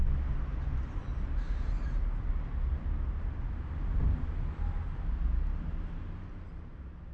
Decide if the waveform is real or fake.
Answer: real